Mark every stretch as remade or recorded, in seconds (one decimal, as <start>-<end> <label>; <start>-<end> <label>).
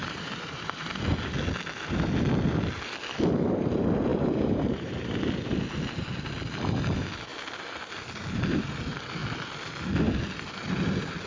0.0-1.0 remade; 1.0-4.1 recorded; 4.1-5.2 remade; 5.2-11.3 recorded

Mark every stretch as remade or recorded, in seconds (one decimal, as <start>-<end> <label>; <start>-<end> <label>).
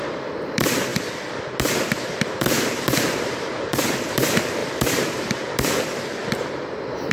0.0-0.9 remade; 0.9-2.0 recorded; 2.0-6.2 remade; 6.2-7.1 recorded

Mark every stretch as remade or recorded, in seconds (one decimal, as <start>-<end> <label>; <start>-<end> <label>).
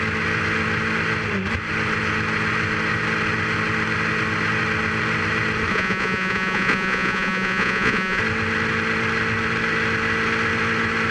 0.0-5.7 recorded; 5.7-8.2 remade; 8.2-11.1 recorded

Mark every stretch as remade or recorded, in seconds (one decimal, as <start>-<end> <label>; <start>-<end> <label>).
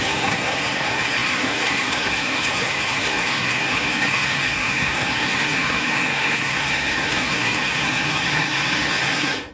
0.0-9.5 remade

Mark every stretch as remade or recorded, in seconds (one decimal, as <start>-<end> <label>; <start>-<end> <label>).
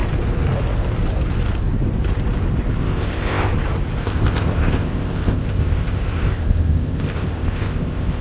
0.0-2.8 recorded; 2.8-3.5 remade; 3.5-4.0 recorded; 4.0-8.2 remade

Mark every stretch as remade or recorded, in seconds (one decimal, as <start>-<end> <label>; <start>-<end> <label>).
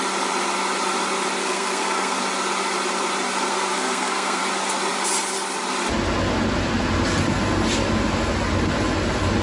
0.0-1.4 recorded; 1.4-2.2 remade; 2.2-3.5 recorded; 3.5-4.4 remade; 4.4-9.4 recorded